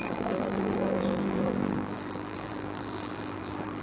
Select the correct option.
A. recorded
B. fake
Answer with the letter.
B